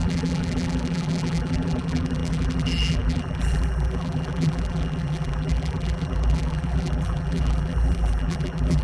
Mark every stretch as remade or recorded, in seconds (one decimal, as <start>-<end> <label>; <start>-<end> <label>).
0.0-8.8 remade